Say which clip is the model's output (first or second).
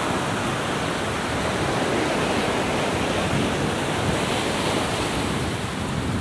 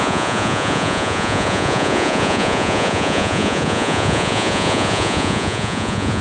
second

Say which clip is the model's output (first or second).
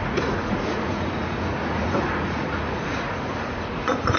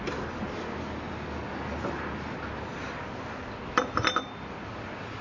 first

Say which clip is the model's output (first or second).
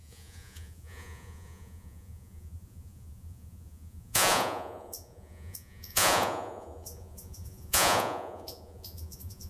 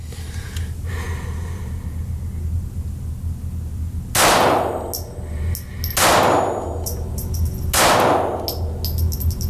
first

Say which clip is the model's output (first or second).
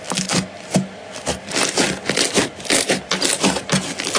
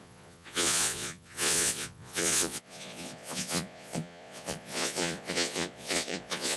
second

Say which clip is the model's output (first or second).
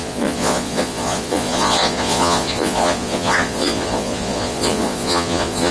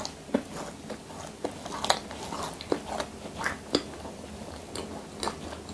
first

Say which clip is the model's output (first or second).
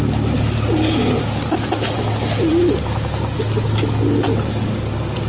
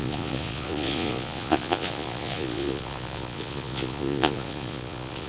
second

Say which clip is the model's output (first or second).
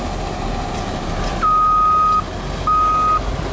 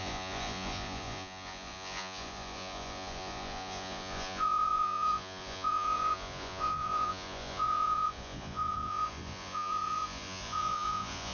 second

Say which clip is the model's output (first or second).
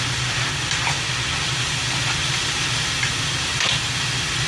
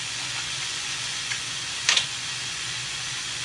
second